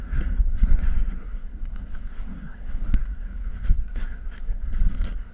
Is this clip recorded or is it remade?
remade